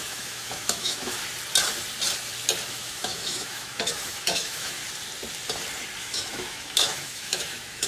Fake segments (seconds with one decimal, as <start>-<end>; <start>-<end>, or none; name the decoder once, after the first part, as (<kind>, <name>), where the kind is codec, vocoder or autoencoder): 0.0-1.2 (autoencoder, DAC-VAE); 2.7-4.8; 6.0-7.9